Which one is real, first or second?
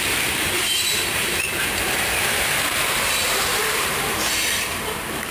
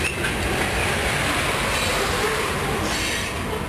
second